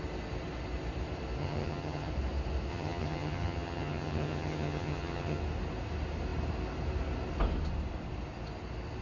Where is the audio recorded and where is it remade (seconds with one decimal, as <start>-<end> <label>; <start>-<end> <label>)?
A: 0.0-1.4 recorded; 1.4-2.1 remade; 2.1-2.7 recorded; 2.7-5.4 remade; 5.4-9.0 recorded